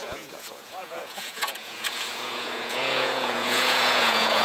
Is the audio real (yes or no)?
no